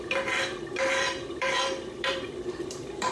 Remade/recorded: remade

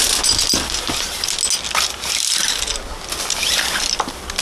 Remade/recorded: recorded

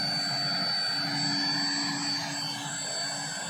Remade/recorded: recorded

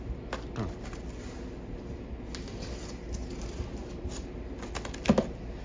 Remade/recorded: recorded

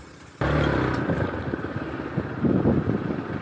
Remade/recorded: recorded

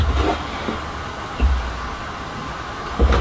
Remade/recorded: recorded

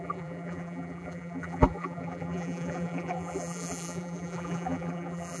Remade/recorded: remade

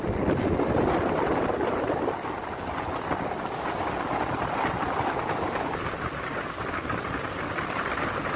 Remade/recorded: recorded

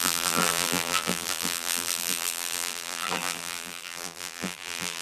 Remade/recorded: remade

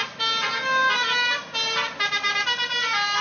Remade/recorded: recorded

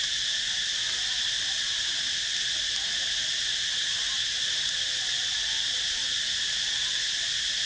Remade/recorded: recorded